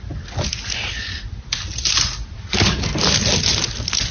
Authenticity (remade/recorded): recorded